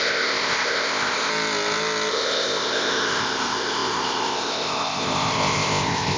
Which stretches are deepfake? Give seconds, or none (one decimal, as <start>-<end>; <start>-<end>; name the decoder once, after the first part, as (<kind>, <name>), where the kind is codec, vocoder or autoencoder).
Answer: 0.0-1.3 (codec, ZipCodec); 2.1-6.2